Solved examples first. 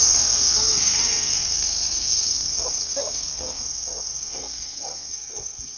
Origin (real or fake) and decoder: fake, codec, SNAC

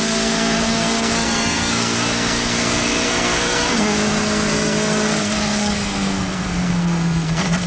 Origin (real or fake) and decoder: fake, codec, SNAC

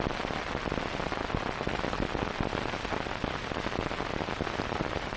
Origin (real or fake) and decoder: real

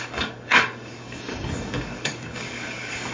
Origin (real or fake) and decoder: fake, codec, DAC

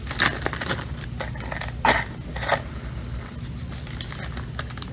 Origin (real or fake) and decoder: real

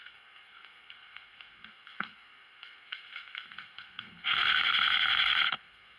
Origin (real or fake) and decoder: fake, codec, SNAC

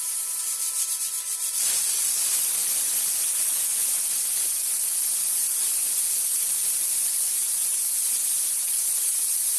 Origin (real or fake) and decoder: real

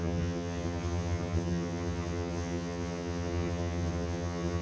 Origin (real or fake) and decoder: fake, vocoder, HiFi-GAN